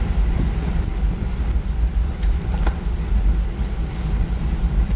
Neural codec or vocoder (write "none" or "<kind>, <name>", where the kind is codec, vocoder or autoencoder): none